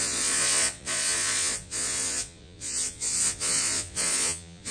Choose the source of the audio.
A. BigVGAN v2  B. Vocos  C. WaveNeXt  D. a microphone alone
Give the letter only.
B